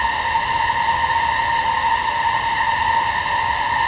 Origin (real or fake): real